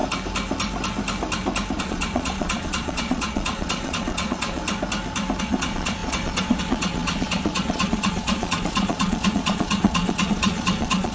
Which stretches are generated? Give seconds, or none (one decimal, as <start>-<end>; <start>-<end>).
1.8-4.6; 5.4-11.1